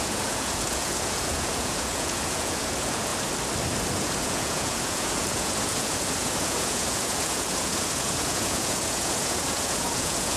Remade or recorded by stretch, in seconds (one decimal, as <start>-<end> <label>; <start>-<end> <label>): 0.0-3.1 remade; 3.1-3.9 recorded; 3.9-10.4 remade